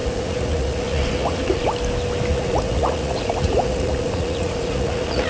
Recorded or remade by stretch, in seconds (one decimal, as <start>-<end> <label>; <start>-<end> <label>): 0.0-1.6 remade; 1.6-2.3 recorded; 2.3-5.3 remade